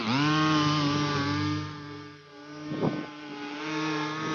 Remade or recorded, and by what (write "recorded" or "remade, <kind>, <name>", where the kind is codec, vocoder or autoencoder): recorded